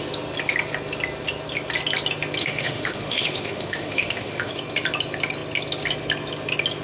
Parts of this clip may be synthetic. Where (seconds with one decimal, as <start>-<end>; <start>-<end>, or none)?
2.4-4.5